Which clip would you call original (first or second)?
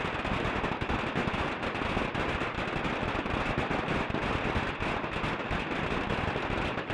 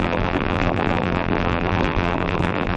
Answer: first